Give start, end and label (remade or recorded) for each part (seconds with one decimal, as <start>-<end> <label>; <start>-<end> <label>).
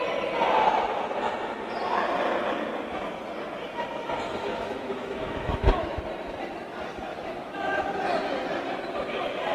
0.0-4.4 recorded; 4.4-6.0 remade; 6.0-7.1 recorded; 7.1-7.9 remade; 7.9-9.5 recorded